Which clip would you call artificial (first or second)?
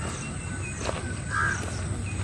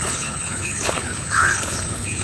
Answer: second